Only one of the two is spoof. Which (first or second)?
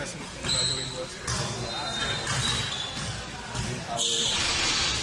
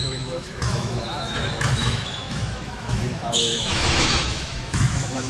second